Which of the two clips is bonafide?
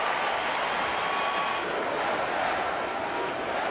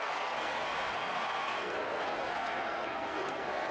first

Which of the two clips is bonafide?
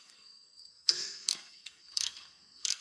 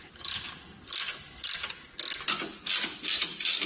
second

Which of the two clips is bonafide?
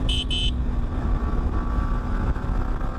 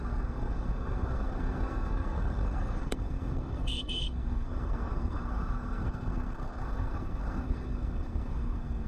first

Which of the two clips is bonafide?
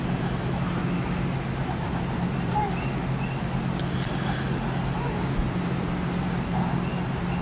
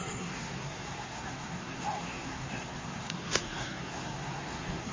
first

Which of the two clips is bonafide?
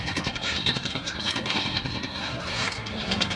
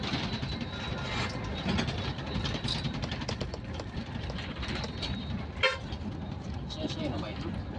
second